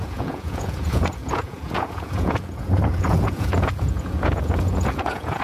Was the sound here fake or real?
fake